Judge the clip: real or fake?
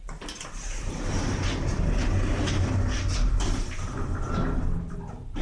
real